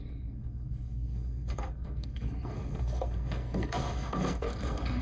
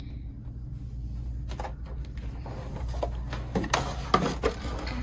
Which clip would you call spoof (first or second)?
first